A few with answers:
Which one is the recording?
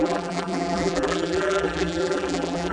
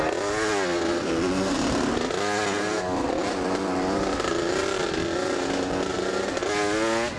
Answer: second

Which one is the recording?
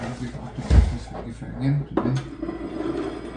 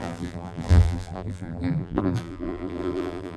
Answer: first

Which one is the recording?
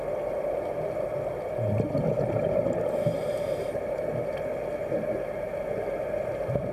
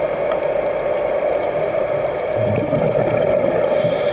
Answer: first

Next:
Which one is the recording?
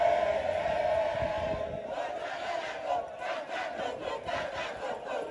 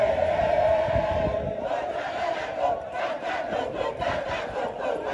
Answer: first